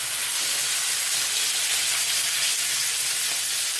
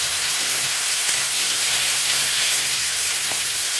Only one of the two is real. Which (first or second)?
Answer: first